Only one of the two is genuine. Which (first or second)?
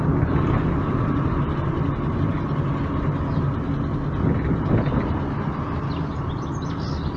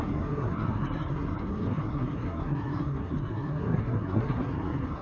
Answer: first